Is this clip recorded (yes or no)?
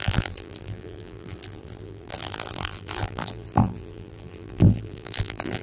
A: no